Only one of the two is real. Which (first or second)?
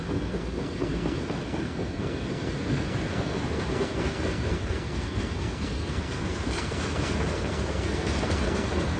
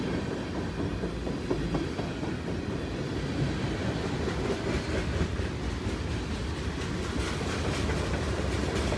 second